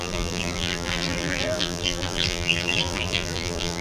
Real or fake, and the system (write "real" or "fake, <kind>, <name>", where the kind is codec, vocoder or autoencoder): fake, vocoder, BigVGAN v2